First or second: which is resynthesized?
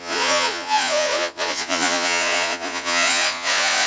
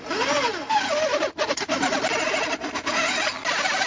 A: first